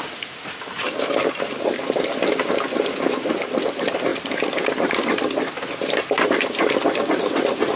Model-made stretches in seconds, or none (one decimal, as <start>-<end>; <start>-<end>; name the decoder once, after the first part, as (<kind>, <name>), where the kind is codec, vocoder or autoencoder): none